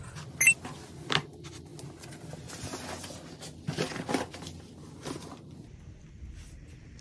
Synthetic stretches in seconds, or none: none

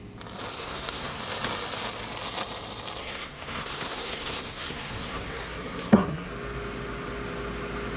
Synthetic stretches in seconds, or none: 0.5-1.2 (codec, SNAC); 3.0-6.3

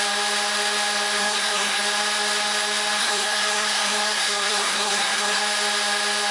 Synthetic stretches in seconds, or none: 1.2-1.8 (codec, SNAC); 3.0-5.4

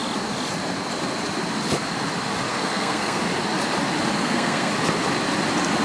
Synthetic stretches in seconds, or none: 2.5-3.2 (codec, SNAC); 4.2-4.7

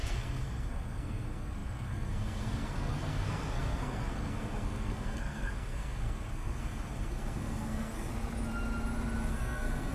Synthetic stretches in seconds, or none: 0.0-8.1 (codec, SNAC); 9.3-9.9

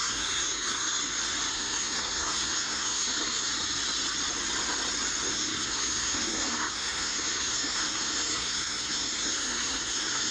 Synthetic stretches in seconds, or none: 0.0-1.0 (codec, SNAC); 1.5-3.5; 5.3-10.3